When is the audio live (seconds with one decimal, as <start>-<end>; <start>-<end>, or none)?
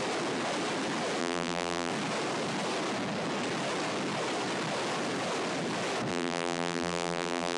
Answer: 0.0-1.2; 1.9-6.1